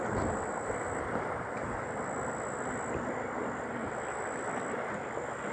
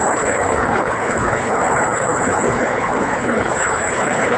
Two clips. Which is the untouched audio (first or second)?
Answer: first